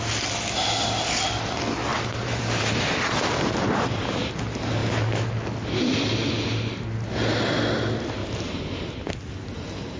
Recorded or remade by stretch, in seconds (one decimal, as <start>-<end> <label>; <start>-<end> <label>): 0.0-1.9 recorded; 1.9-4.3 remade; 4.3-8.2 recorded; 8.2-9.1 remade; 9.1-10.0 recorded